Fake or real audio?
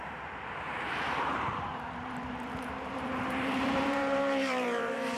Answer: fake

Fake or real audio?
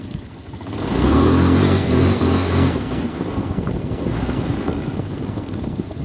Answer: fake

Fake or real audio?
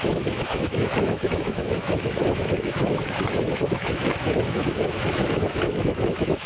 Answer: fake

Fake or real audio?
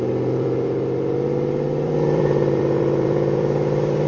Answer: fake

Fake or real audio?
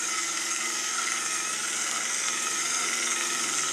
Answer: fake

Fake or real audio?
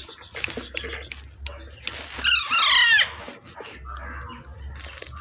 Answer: real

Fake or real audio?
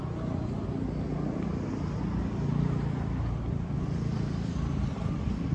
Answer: real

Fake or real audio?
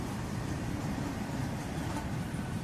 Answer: fake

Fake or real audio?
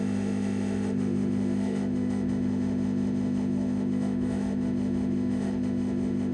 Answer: fake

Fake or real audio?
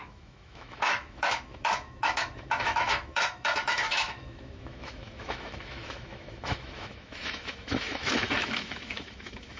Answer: fake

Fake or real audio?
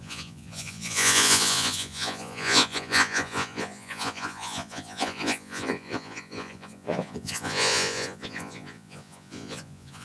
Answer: fake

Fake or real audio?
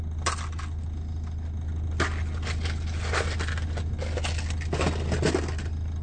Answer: real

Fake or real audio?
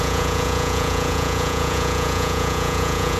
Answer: fake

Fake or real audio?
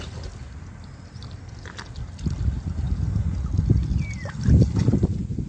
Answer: real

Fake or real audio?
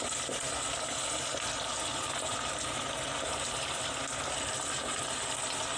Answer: real